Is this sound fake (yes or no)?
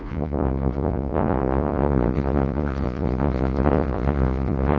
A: yes